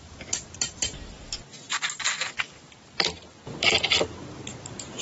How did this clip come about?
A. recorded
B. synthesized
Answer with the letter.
A